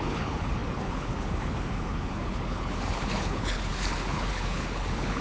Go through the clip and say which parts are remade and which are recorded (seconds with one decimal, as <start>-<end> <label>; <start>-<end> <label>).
0.0-5.2 remade